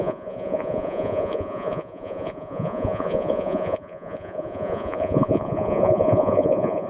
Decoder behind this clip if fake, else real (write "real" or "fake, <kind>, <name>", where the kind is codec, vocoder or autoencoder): fake, vocoder, Vocos